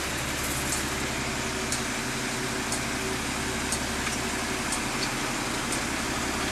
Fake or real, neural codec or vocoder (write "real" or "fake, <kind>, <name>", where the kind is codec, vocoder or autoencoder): real